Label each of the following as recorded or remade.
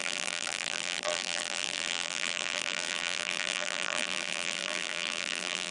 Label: remade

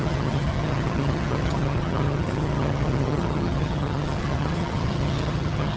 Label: remade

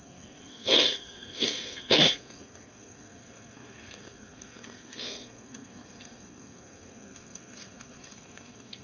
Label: remade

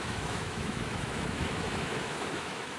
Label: remade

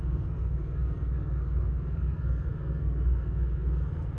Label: remade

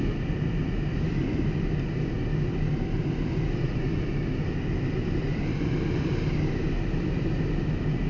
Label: recorded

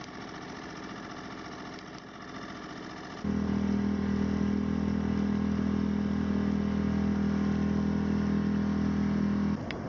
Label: recorded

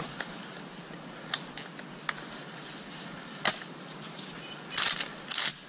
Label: recorded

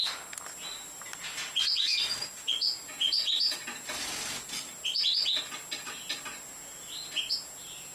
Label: recorded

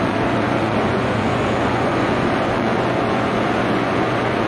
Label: remade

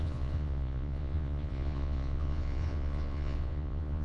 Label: remade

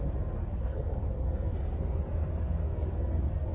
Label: remade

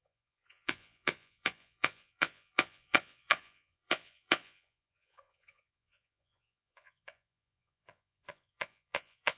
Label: remade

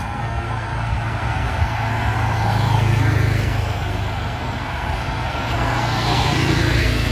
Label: remade